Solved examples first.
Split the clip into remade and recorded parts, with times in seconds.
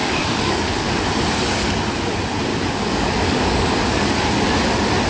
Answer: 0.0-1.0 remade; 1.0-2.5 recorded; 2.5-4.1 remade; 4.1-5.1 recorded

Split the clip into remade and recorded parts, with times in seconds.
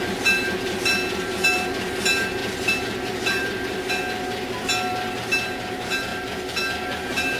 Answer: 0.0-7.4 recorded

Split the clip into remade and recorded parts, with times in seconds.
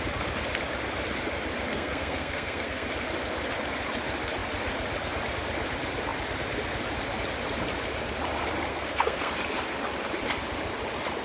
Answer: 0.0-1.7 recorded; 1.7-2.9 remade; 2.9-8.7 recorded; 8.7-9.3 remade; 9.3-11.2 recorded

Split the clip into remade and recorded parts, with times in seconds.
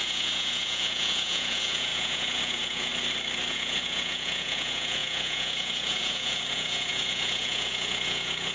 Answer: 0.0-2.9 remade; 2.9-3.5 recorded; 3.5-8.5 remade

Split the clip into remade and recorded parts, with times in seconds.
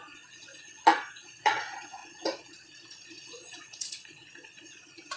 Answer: 0.0-5.2 remade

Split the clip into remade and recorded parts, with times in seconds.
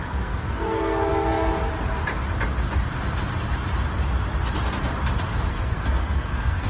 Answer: 0.0-1.5 remade; 1.5-5.5 recorded; 5.5-6.7 remade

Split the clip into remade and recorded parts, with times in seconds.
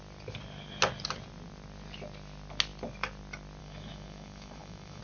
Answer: 0.0-3.6 recorded; 3.6-5.0 remade